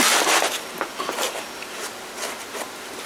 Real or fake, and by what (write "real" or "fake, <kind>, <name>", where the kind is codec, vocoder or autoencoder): real